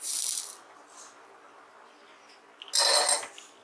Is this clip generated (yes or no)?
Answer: no